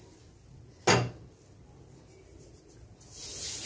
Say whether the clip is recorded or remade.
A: recorded